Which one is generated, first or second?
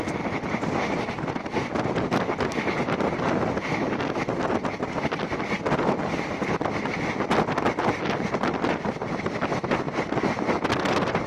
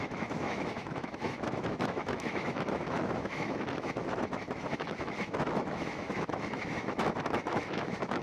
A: second